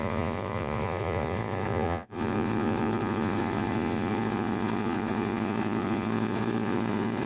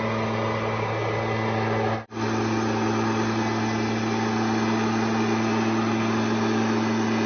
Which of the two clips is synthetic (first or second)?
first